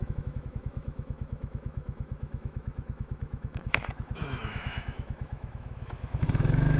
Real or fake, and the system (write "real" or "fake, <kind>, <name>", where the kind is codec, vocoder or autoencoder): fake, autoencoder, DAC-VAE